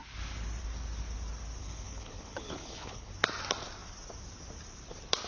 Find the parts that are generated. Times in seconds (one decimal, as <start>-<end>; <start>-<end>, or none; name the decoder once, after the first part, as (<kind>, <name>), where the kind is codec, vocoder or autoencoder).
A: 1.6-3.1 (codec, HILCodec)